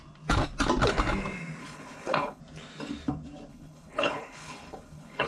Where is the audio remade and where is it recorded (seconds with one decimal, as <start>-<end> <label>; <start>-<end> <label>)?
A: 0.0-1.6 recorded; 1.6-2.4 remade; 2.4-3.5 recorded; 3.5-5.3 remade